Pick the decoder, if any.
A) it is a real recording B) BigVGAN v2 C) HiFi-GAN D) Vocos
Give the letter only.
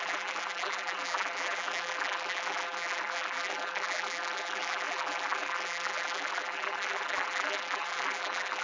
B